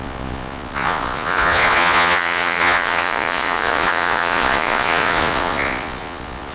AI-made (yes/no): yes